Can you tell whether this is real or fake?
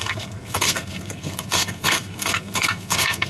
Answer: fake